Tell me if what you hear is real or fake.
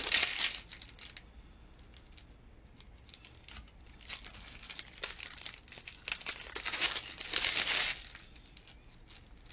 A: real